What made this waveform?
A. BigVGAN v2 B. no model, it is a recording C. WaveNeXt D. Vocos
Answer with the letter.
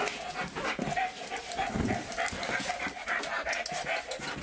B